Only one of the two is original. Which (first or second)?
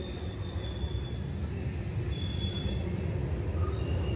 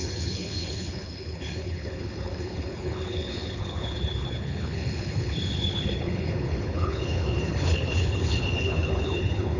first